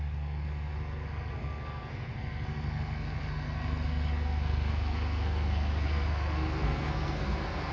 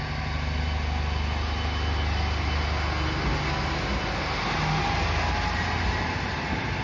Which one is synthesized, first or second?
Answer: first